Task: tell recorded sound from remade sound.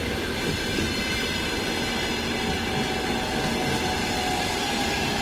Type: recorded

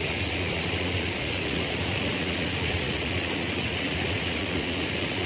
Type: remade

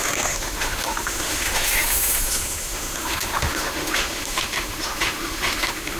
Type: remade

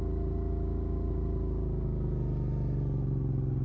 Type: recorded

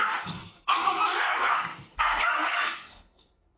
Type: remade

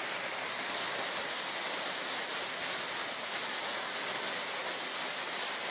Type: recorded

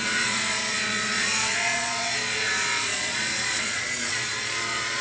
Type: remade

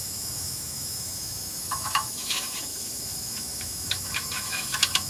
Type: remade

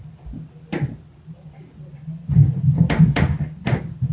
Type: recorded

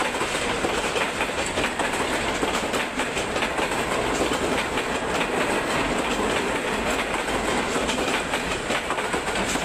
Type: recorded